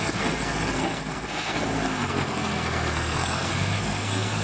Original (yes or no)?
no